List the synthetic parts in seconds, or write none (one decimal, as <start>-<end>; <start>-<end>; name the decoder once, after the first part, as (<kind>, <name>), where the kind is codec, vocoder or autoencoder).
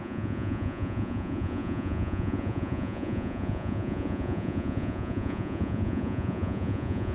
0.0-7.1 (vocoder, Vocos)